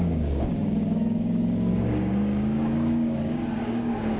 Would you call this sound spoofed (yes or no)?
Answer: yes